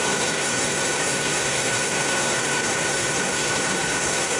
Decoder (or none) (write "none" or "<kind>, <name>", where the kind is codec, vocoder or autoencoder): codec, SNAC